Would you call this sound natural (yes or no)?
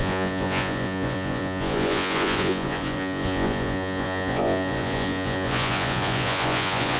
no